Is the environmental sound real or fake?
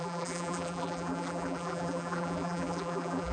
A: fake